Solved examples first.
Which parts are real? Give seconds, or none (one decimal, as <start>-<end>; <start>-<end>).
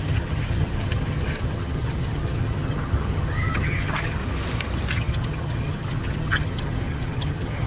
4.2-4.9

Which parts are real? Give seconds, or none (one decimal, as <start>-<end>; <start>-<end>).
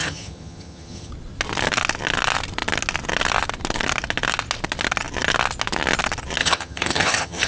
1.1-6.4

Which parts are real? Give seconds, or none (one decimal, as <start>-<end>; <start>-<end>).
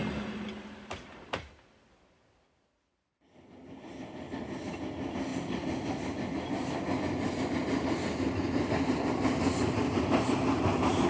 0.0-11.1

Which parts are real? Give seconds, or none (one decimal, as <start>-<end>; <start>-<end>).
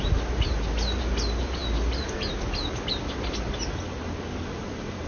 0.0-5.1